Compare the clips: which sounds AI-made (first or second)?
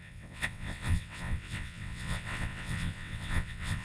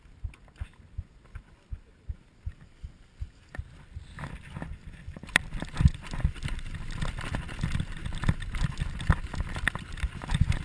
first